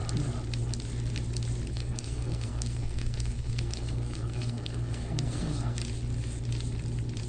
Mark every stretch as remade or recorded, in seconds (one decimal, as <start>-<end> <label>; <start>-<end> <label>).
0.0-1.7 recorded; 1.7-5.8 remade; 5.8-7.3 recorded